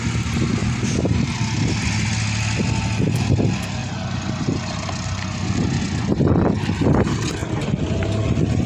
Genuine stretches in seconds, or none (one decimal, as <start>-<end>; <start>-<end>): 0.0-0.6; 1.3-8.7